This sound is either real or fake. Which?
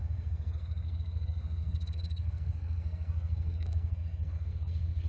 fake